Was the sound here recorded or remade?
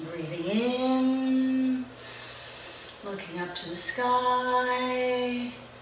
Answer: recorded